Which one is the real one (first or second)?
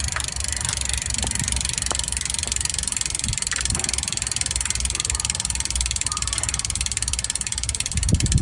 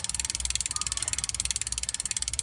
second